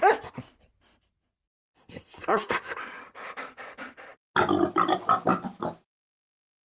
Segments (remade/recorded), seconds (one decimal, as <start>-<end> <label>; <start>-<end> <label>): 0.0-1.6 recorded; 1.6-2.8 remade; 2.8-6.6 recorded